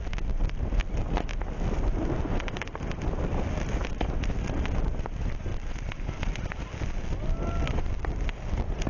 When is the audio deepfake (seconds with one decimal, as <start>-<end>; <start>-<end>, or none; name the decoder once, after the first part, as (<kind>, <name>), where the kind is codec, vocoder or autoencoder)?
none